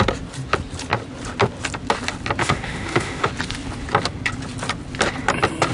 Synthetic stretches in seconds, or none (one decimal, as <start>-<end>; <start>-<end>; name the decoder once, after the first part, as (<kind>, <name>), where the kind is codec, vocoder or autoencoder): 2.4-3.3 (autoencoder, DAC-VAE)